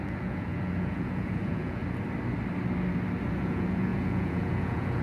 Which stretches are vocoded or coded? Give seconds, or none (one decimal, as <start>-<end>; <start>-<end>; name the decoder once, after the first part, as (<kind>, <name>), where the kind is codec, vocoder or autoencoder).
0.0-1.8 (vocoder, Vocos); 3.3-5.0